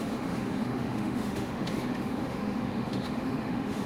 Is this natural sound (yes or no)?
no